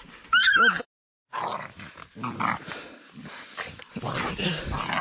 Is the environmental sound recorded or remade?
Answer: recorded